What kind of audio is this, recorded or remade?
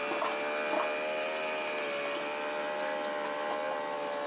recorded